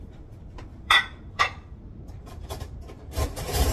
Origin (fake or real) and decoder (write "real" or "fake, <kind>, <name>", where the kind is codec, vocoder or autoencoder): fake, vocoder, BigVGAN v2